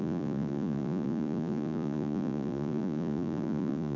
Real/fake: fake